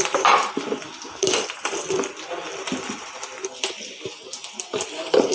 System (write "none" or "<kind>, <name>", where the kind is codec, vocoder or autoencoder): none